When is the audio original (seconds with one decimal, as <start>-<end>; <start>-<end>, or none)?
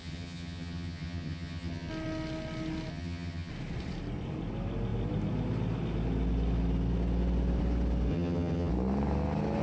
1.9-2.9; 3.5-8.1; 8.7-9.6